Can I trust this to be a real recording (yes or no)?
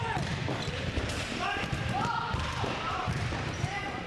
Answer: no